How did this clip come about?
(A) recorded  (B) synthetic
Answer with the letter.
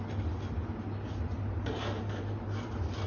A